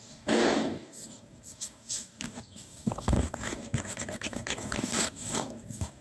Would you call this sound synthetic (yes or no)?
yes